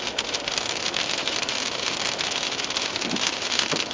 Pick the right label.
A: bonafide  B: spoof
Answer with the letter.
B